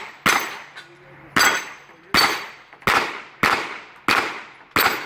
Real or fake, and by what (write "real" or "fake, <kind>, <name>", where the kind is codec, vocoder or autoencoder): real